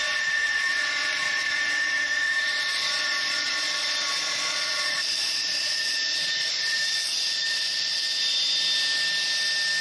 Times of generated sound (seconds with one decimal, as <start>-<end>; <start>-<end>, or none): 0.0-8.2